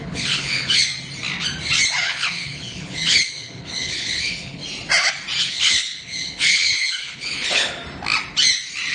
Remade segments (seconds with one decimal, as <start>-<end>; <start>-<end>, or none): 0.0-0.9; 2.0-4.6; 5.4-7.8